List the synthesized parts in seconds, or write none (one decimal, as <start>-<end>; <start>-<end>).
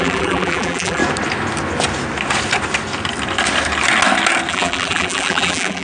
0.0-1.0; 4.5-5.8